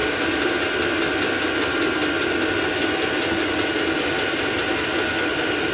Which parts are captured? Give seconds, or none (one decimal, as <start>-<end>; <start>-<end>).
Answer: 0.0-5.7